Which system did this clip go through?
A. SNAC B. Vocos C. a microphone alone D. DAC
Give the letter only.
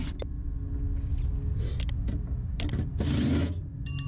C